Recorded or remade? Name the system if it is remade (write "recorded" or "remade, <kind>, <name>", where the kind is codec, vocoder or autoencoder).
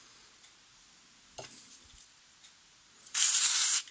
recorded